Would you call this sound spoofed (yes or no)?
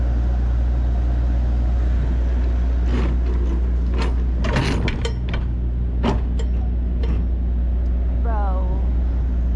no